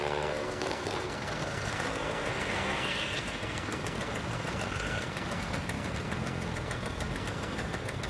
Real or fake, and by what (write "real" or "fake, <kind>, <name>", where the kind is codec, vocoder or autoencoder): fake, codec, SNAC